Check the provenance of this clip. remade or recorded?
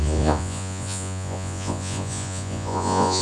remade